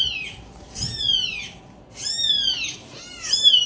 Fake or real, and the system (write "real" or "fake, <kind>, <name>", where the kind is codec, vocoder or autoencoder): real